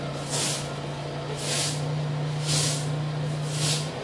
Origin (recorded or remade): recorded